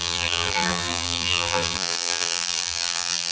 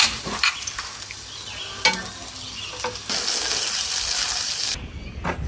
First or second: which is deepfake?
first